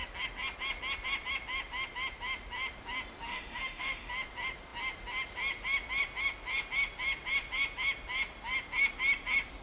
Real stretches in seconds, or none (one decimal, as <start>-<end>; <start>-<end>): 0.0-3.3; 4.1-9.6